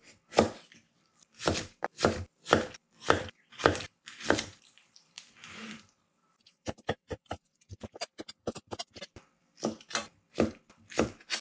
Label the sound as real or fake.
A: fake